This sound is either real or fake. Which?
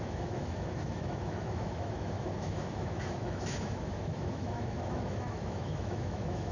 fake